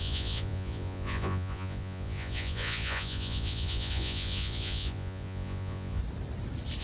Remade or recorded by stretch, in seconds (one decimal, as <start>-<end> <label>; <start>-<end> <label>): 0.0-6.0 remade; 6.0-6.8 recorded